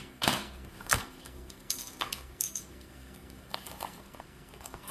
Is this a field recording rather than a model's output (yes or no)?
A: no